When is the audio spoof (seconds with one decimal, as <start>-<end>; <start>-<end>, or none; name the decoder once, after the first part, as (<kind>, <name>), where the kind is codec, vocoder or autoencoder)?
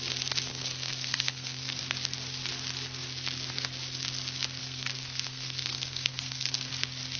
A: 0.5-1.8 (codec, SNAC); 4.6-6.7